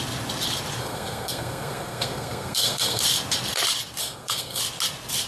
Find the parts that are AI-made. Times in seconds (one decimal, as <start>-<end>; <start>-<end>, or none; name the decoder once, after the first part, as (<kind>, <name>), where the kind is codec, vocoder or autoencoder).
0.8-3.0 (codec, SNAC); 4.0-4.6